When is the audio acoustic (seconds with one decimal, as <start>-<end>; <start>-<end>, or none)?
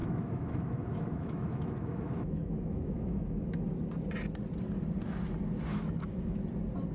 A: 3.6-5.7; 6.4-6.9